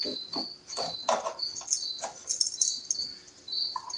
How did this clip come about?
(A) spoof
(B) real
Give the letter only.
B